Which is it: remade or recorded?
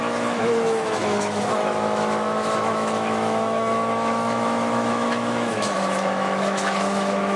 remade